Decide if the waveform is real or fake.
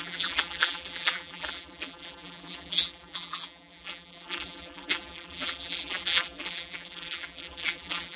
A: fake